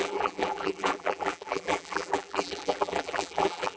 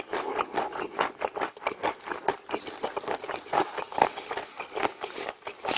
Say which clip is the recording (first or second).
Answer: second